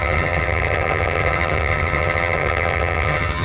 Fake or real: fake